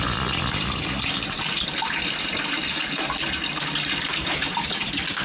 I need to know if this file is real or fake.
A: real